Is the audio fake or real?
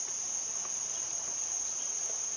fake